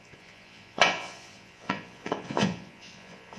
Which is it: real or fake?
fake